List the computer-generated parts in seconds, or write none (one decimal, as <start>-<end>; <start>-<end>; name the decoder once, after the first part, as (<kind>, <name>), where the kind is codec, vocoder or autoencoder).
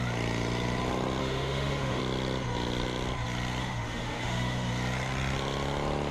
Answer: 1.2-2.0 (autoencoder, DAC-VAE); 3.6-4.7